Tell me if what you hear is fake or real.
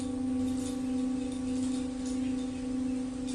real